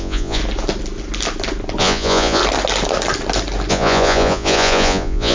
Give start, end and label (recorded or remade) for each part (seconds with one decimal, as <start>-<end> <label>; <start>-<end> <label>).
0.0-0.4 remade; 0.4-1.8 recorded; 1.8-2.4 remade; 2.4-3.7 recorded; 3.7-5.3 remade